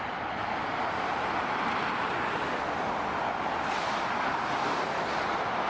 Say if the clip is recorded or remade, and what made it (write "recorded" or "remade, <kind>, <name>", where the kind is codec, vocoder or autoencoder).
recorded